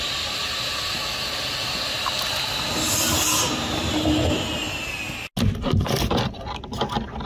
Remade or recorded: recorded